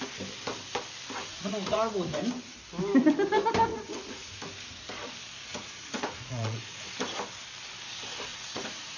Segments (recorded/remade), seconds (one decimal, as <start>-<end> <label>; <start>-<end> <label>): 0.0-1.2 recorded; 1.2-2.2 remade; 2.2-3.7 recorded; 3.7-4.4 remade; 4.4-5.5 recorded; 5.5-7.0 remade; 7.0-8.3 recorded; 8.3-9.0 remade